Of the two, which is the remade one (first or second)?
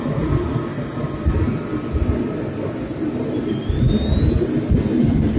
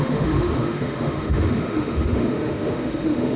second